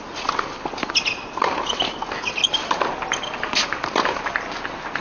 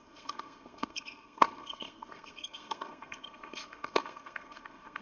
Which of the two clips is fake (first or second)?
second